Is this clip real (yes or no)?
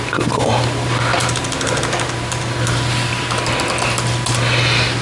yes